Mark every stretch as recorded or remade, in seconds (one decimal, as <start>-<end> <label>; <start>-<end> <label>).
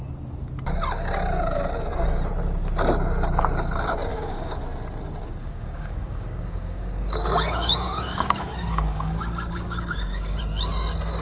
0.0-4.1 recorded; 4.1-4.6 remade; 4.6-5.4 recorded; 5.4-10.4 remade; 10.4-11.2 recorded